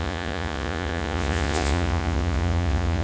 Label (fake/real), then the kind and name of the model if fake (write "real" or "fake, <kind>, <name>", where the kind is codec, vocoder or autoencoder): fake, vocoder, Vocos